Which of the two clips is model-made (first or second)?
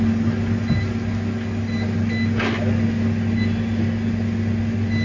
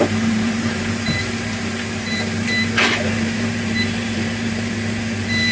second